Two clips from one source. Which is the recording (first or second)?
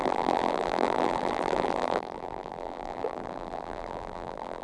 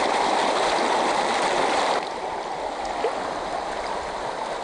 second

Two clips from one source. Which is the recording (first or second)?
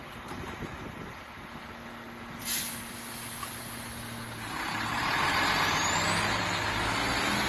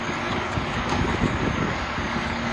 first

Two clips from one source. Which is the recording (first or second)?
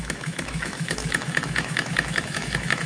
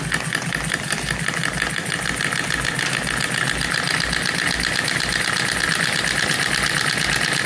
second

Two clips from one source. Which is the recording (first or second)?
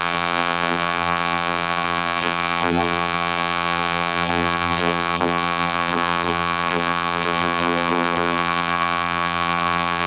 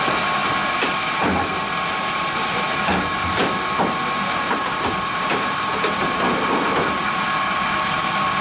second